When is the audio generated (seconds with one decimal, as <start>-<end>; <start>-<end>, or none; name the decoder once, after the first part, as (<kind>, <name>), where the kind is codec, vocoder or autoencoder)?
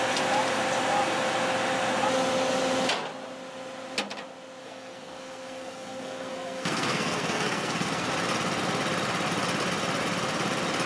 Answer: 4.6-8.1 (codec, SNAC)